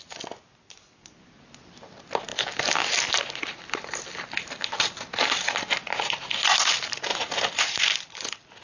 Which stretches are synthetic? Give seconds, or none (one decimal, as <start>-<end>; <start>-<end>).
none